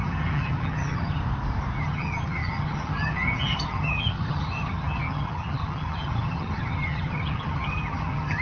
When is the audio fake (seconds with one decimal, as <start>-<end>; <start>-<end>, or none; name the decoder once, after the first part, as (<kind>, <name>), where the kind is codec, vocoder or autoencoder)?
0.0-1.2 (vocoder, HiFi-GAN); 1.8-8.4